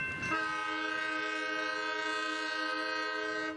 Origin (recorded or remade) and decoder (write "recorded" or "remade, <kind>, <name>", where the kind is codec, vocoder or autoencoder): recorded